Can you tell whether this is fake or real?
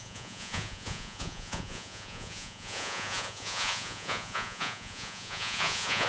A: fake